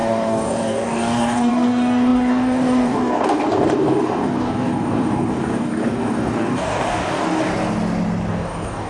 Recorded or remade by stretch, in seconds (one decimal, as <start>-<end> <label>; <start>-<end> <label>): 0.0-7.5 remade; 7.5-8.3 recorded; 8.3-8.9 remade